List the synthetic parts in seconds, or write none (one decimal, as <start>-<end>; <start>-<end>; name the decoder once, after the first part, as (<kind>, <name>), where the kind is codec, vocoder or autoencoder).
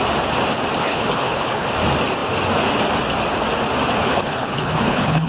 0.8-1.7 (codec, HILCodec); 4.0-5.3